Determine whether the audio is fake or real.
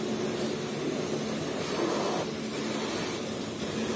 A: real